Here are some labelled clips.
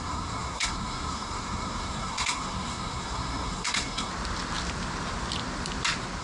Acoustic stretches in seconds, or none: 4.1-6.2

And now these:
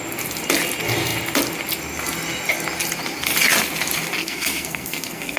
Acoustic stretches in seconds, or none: 0.0-4.2

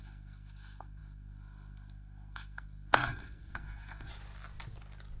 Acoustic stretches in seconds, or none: 4.1-5.2

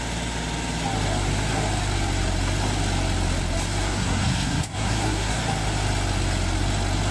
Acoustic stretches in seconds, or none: 0.0-3.8; 5.4-7.1

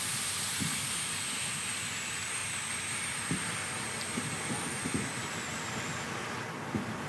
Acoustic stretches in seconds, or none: 0.0-7.1

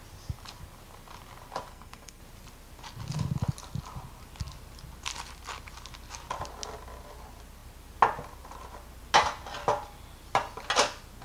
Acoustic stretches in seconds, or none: 0.0-1.7; 2.2-11.2

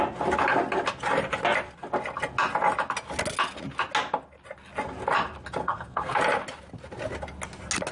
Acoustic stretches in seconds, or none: 0.0-5.6; 6.2-7.9